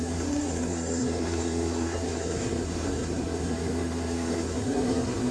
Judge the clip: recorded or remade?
remade